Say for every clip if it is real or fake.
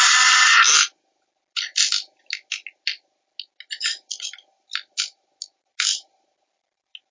real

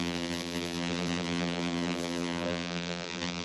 fake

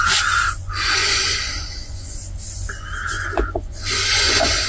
fake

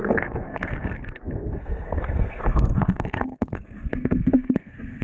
fake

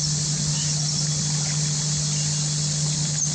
real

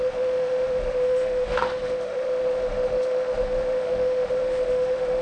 fake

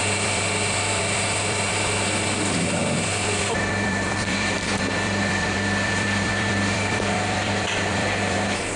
fake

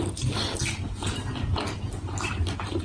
real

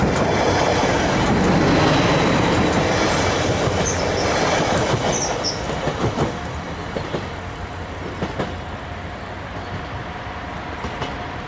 real